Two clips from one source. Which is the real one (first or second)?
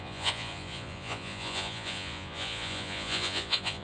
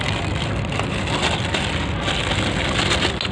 second